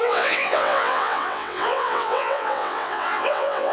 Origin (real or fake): fake